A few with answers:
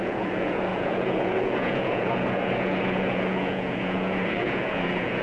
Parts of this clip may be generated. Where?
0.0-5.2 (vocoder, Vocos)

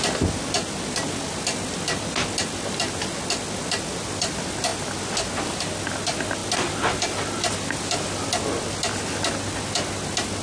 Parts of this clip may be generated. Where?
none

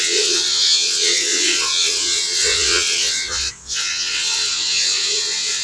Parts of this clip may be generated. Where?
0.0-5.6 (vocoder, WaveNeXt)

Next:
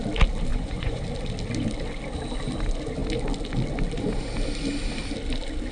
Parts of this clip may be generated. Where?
0.5-1.0 (vocoder, Vocos)

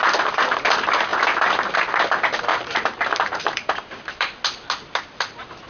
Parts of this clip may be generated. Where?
2.5-4.4 (vocoder, BigVGAN v2)

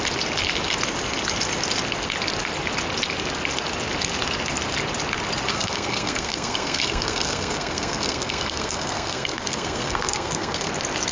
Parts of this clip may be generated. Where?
5.5-10.7 (codec, SNAC)